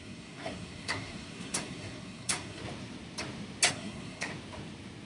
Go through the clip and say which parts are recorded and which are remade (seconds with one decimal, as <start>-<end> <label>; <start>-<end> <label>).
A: 0.0-2.6 remade; 2.6-3.7 recorded; 3.7-4.3 remade; 4.3-5.1 recorded